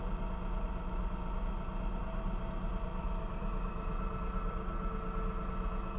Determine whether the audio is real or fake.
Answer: real